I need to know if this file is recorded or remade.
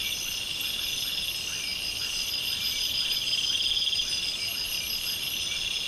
recorded